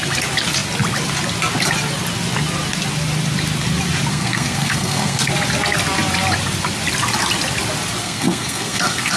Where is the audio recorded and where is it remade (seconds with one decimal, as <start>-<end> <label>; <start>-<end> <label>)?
0.0-4.1 recorded; 4.1-5.3 remade; 5.3-8.0 recorded; 8.0-9.2 remade